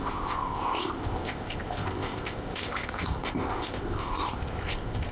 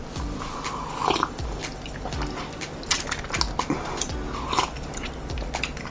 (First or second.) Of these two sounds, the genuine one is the second